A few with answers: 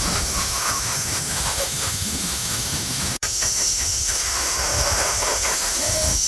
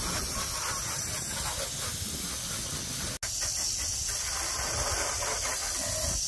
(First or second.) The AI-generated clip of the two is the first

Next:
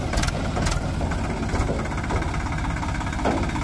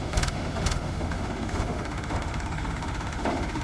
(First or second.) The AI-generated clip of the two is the second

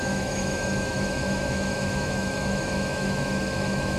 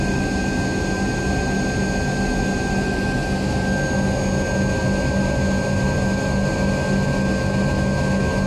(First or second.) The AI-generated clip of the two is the first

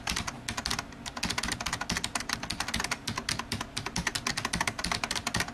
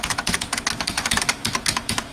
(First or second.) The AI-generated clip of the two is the second